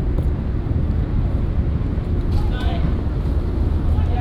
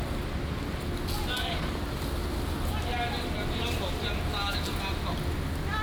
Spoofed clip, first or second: first